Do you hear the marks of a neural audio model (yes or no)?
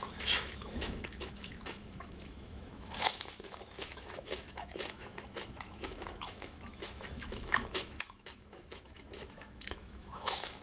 yes